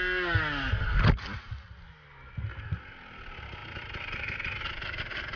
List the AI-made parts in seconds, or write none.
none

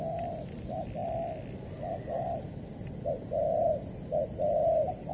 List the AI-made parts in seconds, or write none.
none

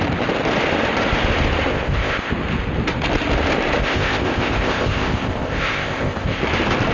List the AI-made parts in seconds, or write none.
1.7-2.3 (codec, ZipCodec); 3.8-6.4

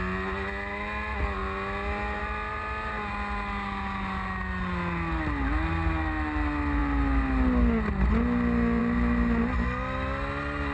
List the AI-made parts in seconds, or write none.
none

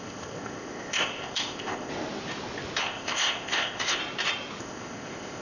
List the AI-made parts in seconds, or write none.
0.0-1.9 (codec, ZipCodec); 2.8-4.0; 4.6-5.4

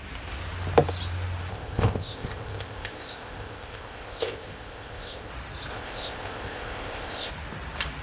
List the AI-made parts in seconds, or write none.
1.5-5.3 (codec, ZipCodec); 5.7-7.3